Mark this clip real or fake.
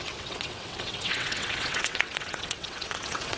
fake